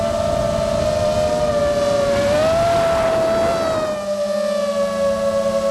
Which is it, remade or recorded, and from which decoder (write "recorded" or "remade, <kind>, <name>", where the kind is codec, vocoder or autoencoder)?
recorded